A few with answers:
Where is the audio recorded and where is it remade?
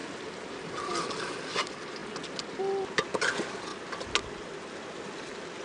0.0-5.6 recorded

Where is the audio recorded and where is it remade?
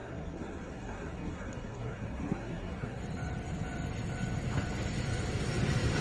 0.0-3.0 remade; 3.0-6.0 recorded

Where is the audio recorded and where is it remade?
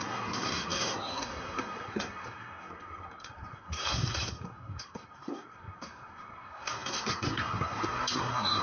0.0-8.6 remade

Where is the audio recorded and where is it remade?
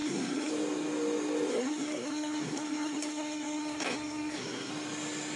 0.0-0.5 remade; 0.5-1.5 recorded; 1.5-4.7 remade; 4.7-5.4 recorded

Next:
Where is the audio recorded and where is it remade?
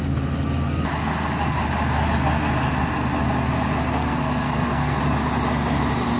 0.0-3.9 recorded; 3.9-5.0 remade; 5.0-6.2 recorded